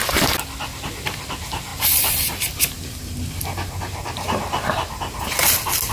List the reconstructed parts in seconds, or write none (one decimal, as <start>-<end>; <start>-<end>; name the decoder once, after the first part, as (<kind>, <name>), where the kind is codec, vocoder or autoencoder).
none